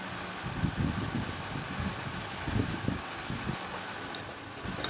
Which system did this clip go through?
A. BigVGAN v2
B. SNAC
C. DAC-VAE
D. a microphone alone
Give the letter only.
D